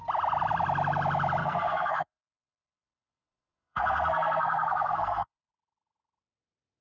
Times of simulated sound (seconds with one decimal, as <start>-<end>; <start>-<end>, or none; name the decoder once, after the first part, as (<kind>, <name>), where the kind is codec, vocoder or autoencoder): 1.4-5.5 (codec, SNAC)

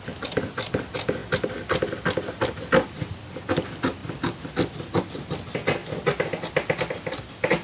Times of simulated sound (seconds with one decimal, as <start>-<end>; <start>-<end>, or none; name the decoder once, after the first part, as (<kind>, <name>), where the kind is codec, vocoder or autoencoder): none

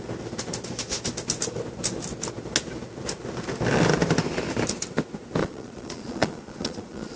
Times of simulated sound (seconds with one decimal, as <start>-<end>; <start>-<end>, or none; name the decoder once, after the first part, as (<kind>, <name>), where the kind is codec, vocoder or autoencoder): 5.4-7.2 (vocoder, Vocos)

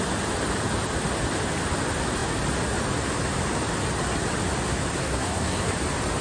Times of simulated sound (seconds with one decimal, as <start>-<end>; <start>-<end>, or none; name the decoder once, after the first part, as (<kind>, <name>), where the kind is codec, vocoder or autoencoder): 5.0-5.7 (codec, SNAC)

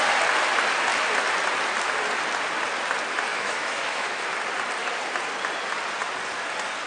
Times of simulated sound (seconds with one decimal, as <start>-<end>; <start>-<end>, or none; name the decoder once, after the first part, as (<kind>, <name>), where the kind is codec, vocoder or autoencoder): 3.3-4.2 (autoencoder, DAC-VAE)

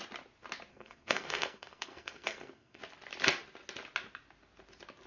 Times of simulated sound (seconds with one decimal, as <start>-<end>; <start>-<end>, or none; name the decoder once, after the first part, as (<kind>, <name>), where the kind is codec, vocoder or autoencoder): 0.7-2.8 (codec, SNAC)